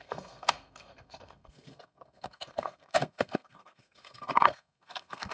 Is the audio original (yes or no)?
no